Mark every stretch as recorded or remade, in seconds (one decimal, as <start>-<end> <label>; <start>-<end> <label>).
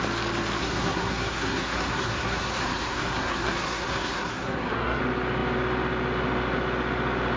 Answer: 0.0-0.6 recorded; 0.6-5.0 remade; 5.0-7.4 recorded